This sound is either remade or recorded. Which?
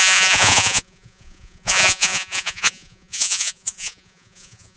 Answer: remade